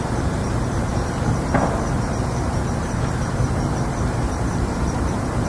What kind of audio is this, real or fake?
fake